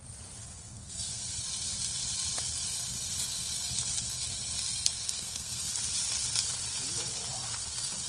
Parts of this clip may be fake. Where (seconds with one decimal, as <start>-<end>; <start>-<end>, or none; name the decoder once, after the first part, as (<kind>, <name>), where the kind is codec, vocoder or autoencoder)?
0.4-1.4 (codec, SNAC); 4.7-5.6